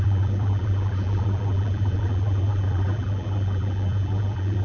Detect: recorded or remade remade